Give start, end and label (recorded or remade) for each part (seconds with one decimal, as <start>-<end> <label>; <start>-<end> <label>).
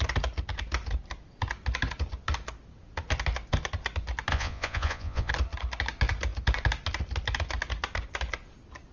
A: 0.0-4.3 recorded; 4.3-5.3 remade; 5.3-8.9 recorded